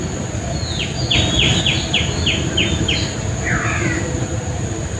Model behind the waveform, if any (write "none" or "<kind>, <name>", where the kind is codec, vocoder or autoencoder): none